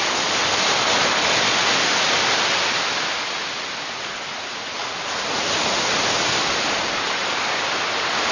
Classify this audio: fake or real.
real